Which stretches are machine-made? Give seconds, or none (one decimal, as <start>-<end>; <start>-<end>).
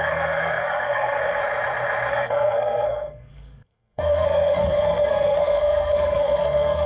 0.0-1.4; 2.1-6.9